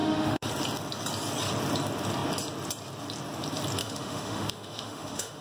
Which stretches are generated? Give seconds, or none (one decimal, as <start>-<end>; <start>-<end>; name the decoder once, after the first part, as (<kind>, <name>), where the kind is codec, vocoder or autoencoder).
0.0-0.5 (autoencoder, DAC-VAE); 3.8-5.4